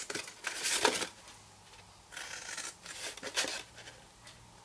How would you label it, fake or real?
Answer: real